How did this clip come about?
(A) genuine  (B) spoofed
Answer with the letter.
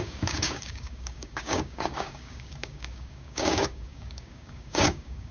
B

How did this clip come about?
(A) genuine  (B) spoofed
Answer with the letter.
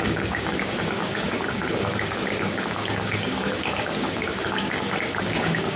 B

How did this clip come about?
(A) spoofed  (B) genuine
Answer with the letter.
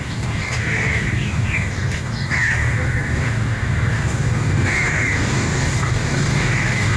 A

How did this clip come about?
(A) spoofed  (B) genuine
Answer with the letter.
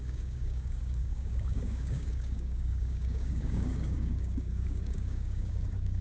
A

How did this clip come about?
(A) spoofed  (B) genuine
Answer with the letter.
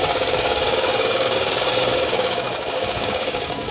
A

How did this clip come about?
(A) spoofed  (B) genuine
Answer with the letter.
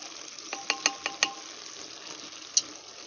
B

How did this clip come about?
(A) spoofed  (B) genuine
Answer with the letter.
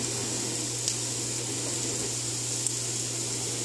B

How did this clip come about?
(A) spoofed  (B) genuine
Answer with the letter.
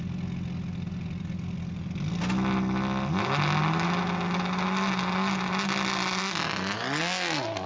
B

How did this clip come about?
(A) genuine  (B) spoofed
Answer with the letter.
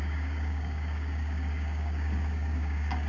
B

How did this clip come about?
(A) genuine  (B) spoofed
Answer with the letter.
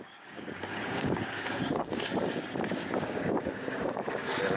B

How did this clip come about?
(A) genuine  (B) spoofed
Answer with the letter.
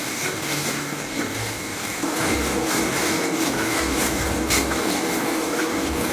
B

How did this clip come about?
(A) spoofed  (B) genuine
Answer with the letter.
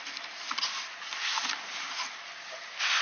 B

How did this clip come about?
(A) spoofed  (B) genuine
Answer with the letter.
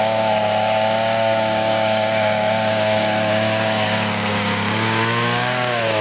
A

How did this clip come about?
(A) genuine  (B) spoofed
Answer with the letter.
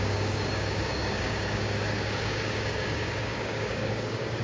B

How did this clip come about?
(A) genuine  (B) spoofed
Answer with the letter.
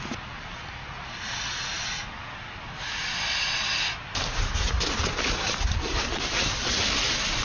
A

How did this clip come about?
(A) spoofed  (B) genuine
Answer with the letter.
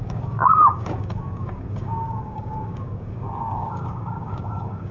A